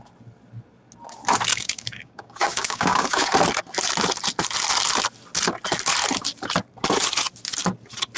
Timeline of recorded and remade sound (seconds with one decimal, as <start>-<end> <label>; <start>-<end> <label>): 0.0-1.5 recorded; 1.5-3.3 remade; 3.3-8.2 recorded